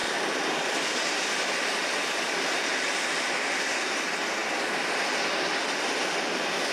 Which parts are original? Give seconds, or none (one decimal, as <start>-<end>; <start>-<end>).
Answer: 4.0-6.7